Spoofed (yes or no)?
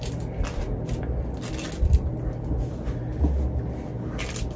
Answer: no